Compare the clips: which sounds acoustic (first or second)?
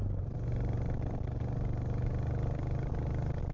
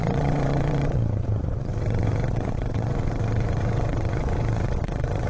first